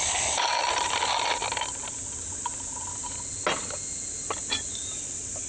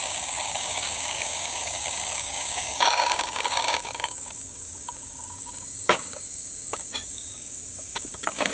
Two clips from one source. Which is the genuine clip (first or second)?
first